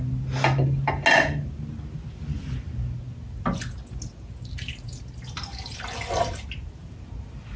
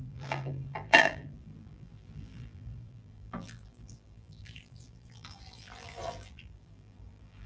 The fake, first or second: second